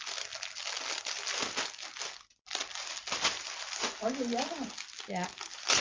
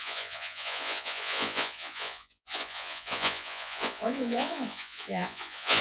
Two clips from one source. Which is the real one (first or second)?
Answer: first